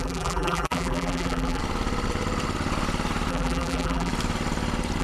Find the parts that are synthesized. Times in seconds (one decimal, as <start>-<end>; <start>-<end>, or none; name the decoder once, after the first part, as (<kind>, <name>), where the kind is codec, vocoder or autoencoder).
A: 0.0-1.6 (vocoder, BigVGAN v2); 3.3-4.1